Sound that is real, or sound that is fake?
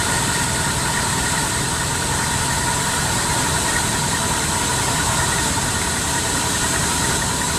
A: fake